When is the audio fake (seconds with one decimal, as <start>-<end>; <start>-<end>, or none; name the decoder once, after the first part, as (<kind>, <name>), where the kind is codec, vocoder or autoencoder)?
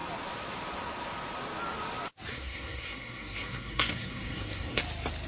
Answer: 2.3-4.8 (codec, SNAC)